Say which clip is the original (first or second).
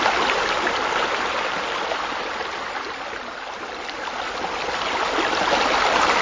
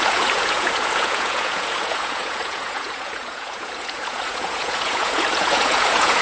first